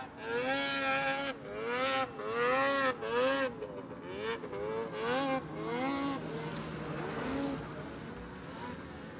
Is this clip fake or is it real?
real